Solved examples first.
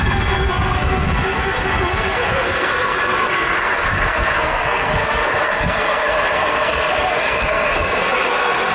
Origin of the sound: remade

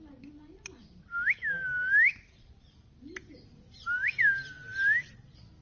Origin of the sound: recorded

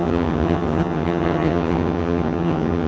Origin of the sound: remade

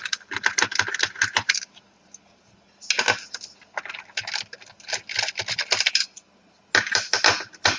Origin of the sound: recorded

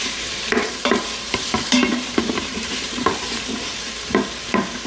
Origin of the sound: remade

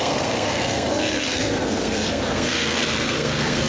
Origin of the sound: remade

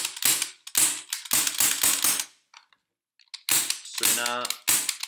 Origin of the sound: recorded